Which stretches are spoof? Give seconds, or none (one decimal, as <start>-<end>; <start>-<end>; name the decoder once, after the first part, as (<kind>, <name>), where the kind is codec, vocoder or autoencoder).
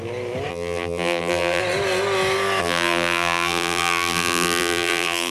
0.5-1.6 (vocoder, BigVGAN v2); 2.6-5.3